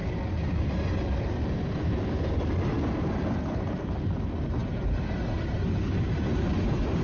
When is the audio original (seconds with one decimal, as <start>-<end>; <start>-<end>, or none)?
0.0-7.0